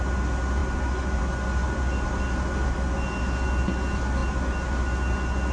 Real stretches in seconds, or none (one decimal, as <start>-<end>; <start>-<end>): 0.0-5.5